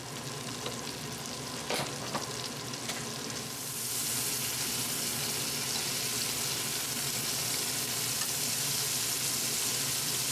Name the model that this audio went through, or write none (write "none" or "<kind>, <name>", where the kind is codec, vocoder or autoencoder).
none